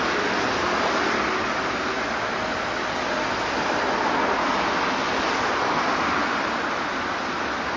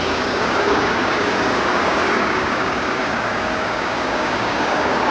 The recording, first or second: first